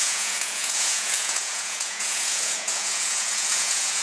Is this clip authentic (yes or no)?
no